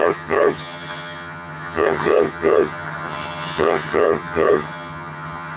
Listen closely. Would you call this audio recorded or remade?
remade